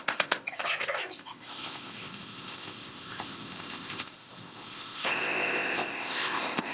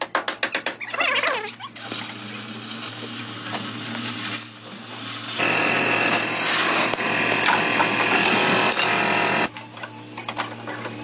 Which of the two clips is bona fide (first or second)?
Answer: second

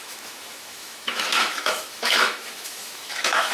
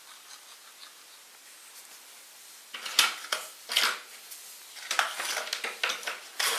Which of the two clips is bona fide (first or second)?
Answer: second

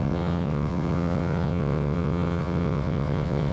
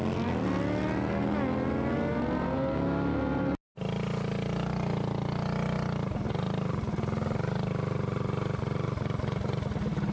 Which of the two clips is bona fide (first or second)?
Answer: second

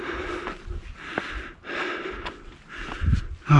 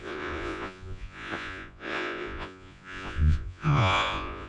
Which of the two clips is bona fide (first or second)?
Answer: first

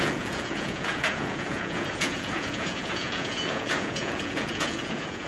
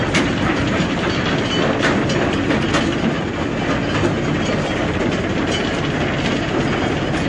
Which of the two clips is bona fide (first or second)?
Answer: second